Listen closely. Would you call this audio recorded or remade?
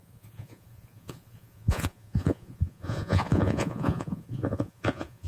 remade